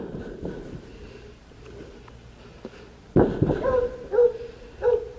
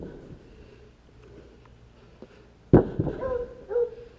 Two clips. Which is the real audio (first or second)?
second